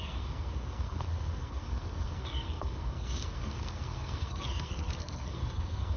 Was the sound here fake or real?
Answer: fake